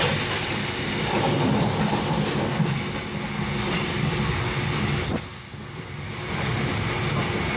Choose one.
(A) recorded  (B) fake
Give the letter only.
A